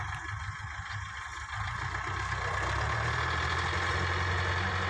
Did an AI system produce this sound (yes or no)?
no